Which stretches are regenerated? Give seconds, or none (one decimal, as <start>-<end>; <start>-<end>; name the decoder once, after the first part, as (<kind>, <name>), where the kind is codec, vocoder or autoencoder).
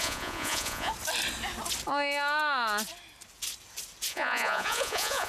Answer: 0.0-0.9 (vocoder, Vocos); 4.1-5.3